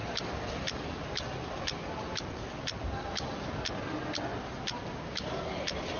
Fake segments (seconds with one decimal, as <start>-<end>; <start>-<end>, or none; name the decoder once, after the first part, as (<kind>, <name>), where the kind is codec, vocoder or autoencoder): none